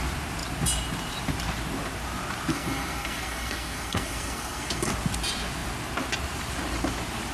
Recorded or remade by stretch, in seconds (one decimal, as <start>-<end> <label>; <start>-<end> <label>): 0.0-2.5 recorded; 2.5-4.9 remade; 4.9-7.3 recorded